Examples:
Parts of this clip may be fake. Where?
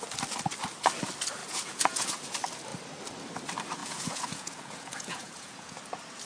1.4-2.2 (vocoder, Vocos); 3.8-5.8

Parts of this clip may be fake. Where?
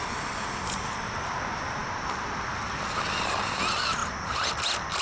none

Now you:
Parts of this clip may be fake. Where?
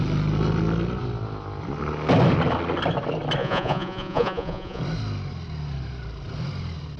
3.4-4.8 (vocoder, Vocos)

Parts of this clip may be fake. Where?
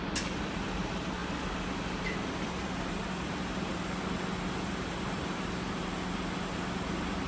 none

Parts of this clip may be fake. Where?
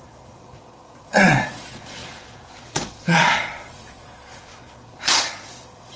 0.0-6.0 (vocoder, Vocos)